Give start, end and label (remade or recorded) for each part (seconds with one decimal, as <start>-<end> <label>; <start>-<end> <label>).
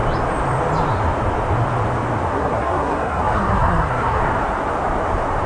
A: 0.0-2.3 recorded; 2.3-4.2 remade; 4.2-5.5 recorded